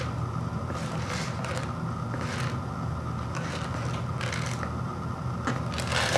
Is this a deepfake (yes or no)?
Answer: no